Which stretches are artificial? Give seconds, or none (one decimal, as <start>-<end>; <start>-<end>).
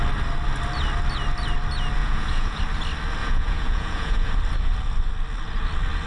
2.0-2.6; 3.2-4.3